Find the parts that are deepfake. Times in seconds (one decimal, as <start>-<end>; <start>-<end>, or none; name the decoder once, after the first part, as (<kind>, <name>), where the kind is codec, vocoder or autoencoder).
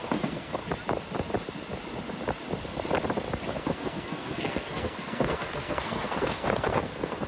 0.0-0.6 (codec, SNAC); 3.5-7.3